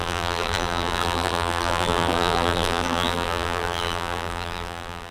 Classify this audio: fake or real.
fake